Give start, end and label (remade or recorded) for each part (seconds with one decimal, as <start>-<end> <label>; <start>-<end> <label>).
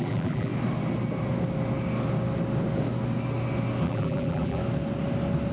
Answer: 0.0-0.5 remade; 0.5-3.8 recorded; 3.8-4.6 remade; 4.6-5.5 recorded